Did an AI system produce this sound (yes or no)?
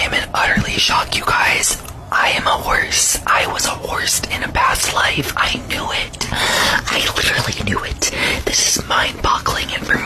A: no